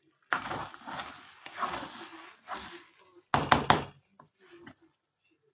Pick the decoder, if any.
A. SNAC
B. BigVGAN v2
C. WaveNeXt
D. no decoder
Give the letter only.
D